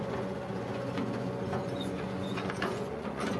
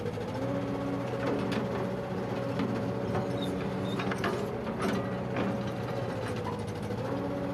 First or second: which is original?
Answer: second